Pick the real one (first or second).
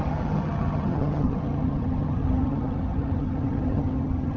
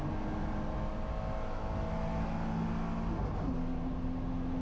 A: second